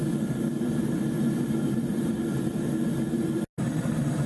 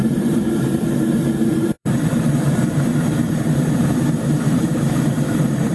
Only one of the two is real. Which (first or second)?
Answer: first